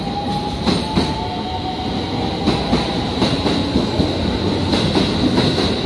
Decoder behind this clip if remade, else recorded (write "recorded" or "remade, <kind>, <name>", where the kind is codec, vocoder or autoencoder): recorded